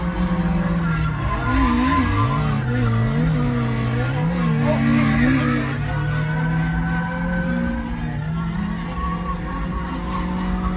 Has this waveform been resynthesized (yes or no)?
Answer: no